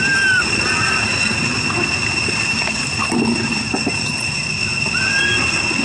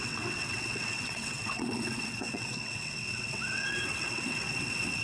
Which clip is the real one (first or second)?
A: first